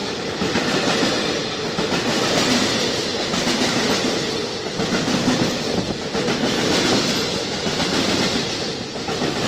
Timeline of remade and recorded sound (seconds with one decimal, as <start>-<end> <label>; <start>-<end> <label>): 0.0-0.6 remade; 0.6-7.3 recorded; 7.3-8.2 remade; 8.2-9.5 recorded